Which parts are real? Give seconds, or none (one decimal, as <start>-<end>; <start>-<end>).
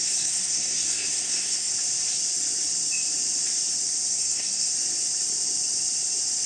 1.7-4.1; 4.7-6.5